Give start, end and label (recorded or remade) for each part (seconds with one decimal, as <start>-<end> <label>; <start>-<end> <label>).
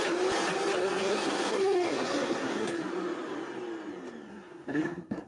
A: 0.0-0.8 recorded; 0.8-2.9 remade; 2.9-4.3 recorded; 4.3-5.3 remade